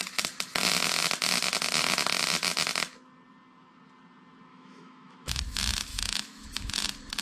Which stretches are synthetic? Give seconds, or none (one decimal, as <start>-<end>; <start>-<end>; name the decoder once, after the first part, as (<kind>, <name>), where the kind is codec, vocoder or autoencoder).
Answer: 4.5-5.4 (autoencoder, DAC-VAE); 5.9-6.7